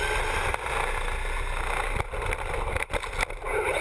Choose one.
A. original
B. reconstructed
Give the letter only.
A